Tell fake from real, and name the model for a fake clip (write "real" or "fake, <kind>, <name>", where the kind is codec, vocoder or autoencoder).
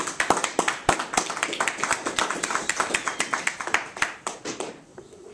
fake, vocoder, BigVGAN v2